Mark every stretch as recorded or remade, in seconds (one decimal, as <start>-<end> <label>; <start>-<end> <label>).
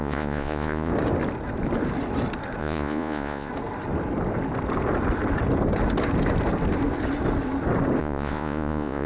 0.0-0.9 remade; 0.9-2.6 recorded; 2.6-3.5 remade; 3.5-8.0 recorded; 8.0-9.1 remade